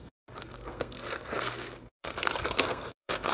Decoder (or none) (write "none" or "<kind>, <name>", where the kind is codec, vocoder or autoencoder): codec, SNAC